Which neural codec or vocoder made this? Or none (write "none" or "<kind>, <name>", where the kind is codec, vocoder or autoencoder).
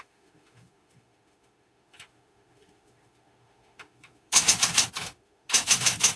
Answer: autoencoder, DAC-VAE